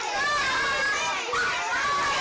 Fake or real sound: real